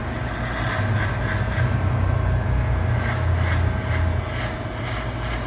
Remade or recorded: recorded